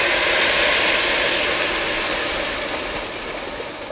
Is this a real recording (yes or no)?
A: yes